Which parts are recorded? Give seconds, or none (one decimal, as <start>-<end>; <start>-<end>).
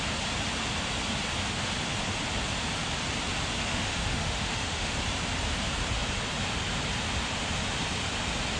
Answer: 0.0-3.7; 5.0-8.6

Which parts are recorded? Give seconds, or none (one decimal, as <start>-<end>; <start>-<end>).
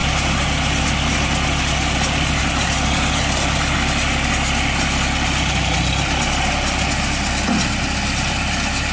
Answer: 0.0-8.9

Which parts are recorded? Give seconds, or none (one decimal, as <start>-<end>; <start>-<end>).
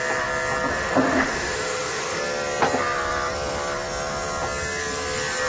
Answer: 0.0-0.7; 2.2-5.5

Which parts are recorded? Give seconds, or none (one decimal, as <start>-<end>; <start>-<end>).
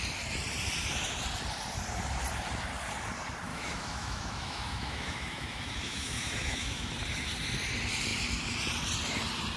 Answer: 0.0-3.5; 6.9-9.6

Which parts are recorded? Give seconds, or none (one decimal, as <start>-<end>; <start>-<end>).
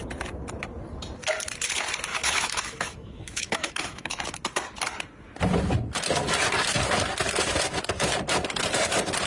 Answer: 0.0-2.1; 4.2-9.3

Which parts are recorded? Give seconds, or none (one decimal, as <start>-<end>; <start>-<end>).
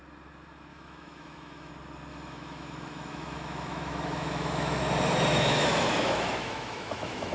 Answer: 0.0-0.7; 1.7-2.1; 4.8-5.3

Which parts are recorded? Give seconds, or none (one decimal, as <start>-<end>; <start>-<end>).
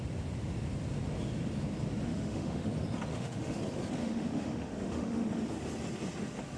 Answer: 0.0-2.1; 2.7-3.1; 3.6-4.0; 5.3-6.6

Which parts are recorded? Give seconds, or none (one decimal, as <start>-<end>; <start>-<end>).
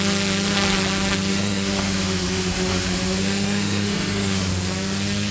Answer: 0.0-1.3; 4.5-5.3